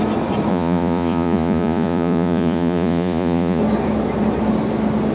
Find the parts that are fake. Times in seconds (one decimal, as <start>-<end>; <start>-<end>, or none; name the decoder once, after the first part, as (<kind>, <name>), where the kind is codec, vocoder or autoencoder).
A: 0.5-3.6 (vocoder, Vocos)